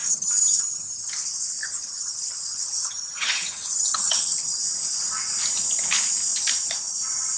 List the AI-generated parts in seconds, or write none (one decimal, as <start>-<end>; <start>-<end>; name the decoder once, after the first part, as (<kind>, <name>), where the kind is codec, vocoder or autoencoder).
0.0-1.1 (vocoder, HiFi-GAN); 1.6-4.6